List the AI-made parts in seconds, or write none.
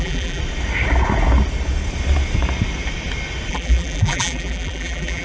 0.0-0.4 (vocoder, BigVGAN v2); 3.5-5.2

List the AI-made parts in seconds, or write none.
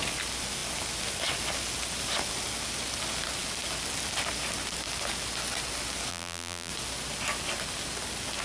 6.1-6.7 (vocoder, BigVGAN v2)